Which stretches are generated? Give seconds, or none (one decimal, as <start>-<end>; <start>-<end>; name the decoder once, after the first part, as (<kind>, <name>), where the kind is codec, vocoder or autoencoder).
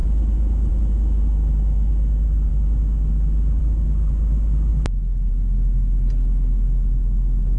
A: none